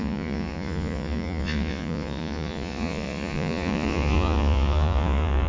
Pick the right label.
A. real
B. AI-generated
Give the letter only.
B